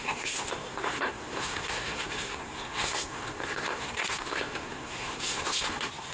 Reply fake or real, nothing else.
fake